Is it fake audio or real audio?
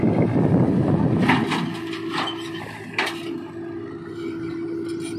real